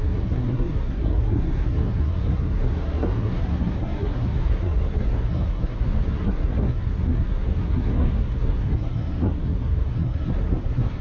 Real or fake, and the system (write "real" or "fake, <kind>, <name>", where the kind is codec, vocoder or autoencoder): fake, codec, SNAC